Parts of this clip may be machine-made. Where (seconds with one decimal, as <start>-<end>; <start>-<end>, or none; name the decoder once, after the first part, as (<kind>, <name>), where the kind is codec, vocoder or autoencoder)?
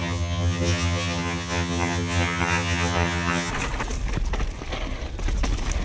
0.0-3.5 (vocoder, HiFi-GAN)